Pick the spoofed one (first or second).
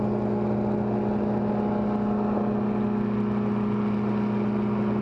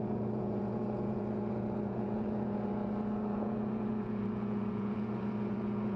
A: second